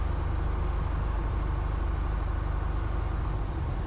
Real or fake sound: real